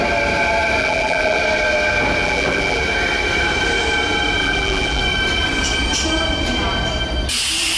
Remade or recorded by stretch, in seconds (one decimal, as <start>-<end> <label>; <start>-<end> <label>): 0.0-0.8 recorded; 0.8-1.4 remade; 1.4-2.2 recorded; 2.2-2.8 remade; 2.8-4.4 recorded; 4.4-5.0 remade; 5.0-7.8 recorded